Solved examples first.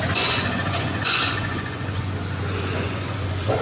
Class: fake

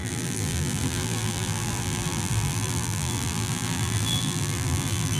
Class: fake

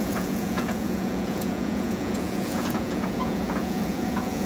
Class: fake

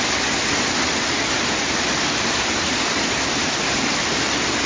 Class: real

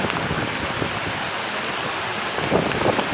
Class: fake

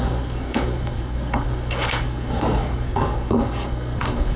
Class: fake